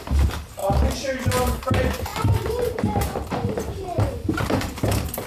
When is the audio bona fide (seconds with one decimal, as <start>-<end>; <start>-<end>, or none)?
0.0-5.3